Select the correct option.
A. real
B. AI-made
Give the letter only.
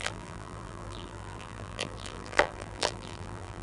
B